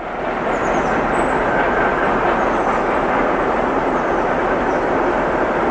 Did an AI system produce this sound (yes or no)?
no